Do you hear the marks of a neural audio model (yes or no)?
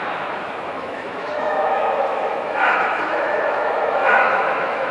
yes